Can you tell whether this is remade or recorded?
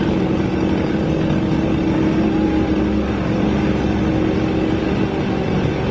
recorded